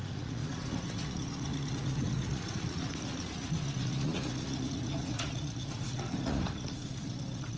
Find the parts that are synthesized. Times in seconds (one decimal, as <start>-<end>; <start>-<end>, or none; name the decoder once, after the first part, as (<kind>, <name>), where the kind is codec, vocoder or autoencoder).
0.0-7.6 (vocoder, Vocos)